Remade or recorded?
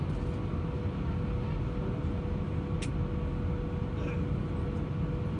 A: recorded